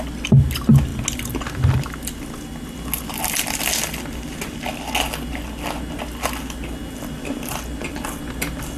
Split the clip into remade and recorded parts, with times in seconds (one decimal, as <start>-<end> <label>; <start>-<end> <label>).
0.0-8.8 recorded